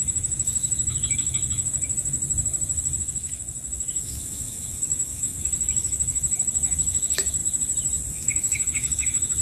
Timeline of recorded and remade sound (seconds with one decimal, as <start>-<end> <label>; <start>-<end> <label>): 0.0-2.2 remade; 2.2-3.0 recorded; 3.0-7.4 remade; 7.4-8.1 recorded; 8.1-9.4 remade